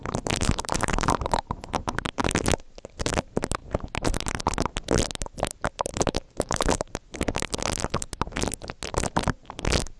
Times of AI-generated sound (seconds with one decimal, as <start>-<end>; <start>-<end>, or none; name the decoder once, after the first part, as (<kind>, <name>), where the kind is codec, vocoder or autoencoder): 0.0-1.5 (vocoder, BigVGAN v2); 2.2-3.1; 5.9-7.0